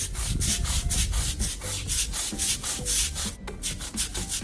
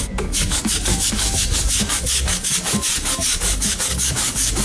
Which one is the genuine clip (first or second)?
first